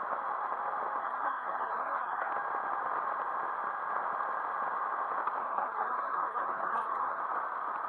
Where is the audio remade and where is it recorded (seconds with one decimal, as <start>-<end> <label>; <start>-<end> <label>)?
0.0-1.0 recorded; 1.0-2.3 remade; 2.3-5.4 recorded; 5.4-7.2 remade; 7.2-7.9 recorded